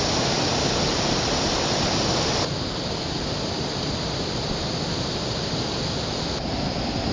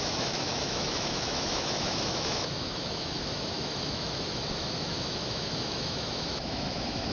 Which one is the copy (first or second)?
second